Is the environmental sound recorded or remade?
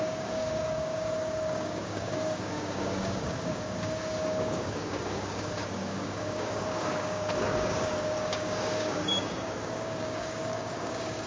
remade